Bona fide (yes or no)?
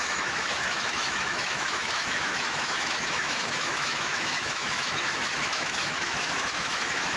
no